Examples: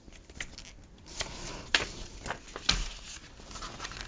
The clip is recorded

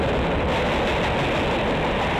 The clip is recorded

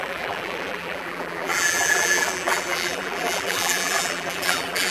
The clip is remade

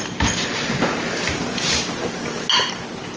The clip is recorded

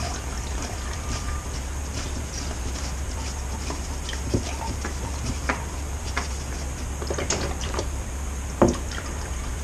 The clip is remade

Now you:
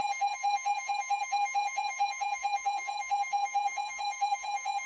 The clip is remade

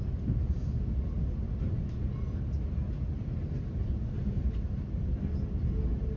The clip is recorded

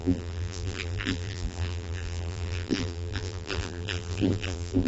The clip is remade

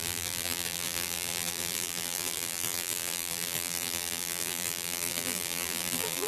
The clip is remade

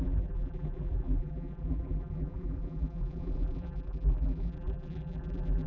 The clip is remade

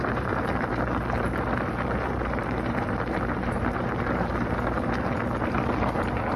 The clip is remade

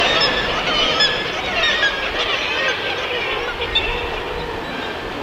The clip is recorded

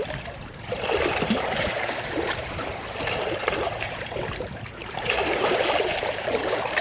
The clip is remade